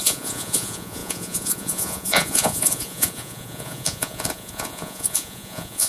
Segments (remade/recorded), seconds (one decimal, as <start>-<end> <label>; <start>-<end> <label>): 0.0-5.9 remade